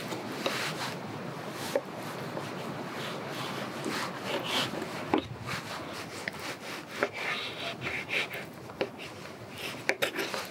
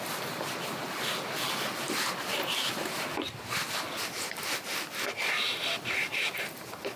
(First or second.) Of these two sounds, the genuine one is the first